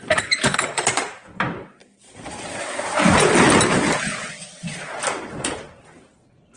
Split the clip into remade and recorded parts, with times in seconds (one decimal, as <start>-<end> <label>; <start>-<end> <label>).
0.0-1.8 remade; 1.8-5.3 recorded; 5.3-6.6 remade

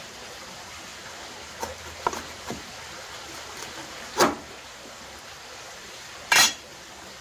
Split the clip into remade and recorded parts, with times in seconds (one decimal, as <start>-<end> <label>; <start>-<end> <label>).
0.0-0.9 remade; 0.9-5.2 recorded; 5.2-7.2 remade